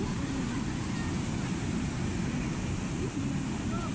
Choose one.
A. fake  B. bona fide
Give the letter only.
B